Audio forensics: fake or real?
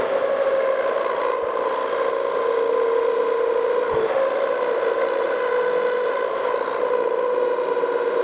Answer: real